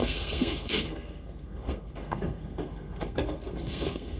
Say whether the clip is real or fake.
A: fake